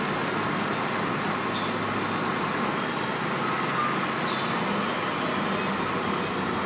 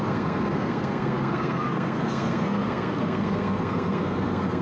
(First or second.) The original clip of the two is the first